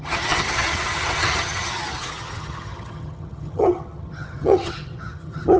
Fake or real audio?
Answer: fake